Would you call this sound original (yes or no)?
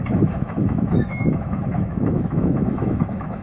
no